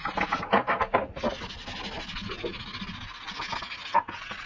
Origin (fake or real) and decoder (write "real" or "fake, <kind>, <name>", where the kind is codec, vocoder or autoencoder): real